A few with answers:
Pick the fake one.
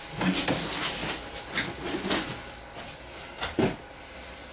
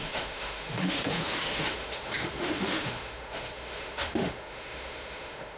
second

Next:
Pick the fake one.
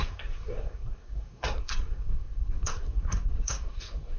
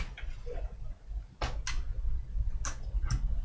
first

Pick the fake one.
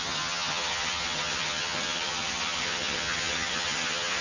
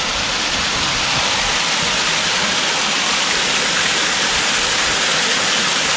first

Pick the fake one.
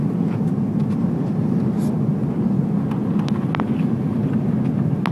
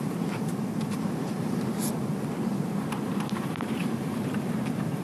second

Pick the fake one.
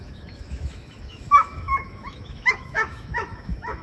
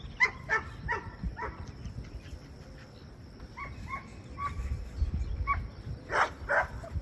first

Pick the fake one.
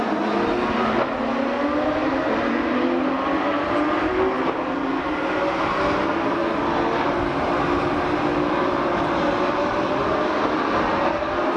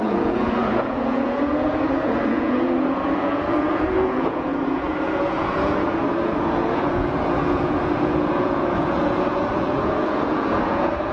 second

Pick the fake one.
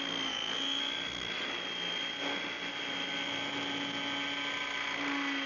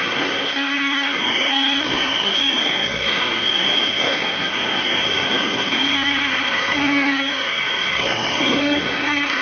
second